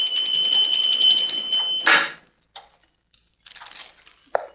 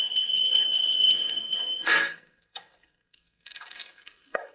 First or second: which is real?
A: first